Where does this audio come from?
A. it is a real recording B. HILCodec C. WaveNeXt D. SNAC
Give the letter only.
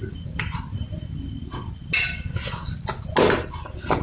A